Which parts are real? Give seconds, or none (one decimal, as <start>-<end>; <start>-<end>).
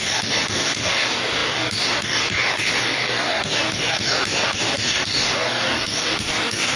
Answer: none